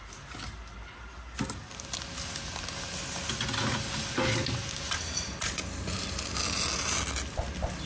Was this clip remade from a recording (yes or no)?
no